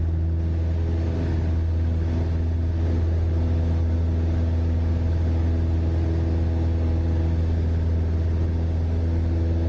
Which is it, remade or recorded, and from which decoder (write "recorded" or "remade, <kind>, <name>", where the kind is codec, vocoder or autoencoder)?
recorded